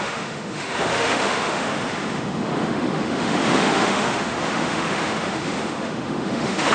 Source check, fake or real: fake